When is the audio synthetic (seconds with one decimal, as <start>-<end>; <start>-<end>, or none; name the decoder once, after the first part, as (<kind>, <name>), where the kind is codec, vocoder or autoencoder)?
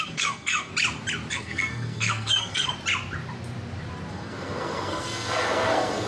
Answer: 0.0-0.7 (codec, SNAC); 1.3-2.7; 4.1-6.1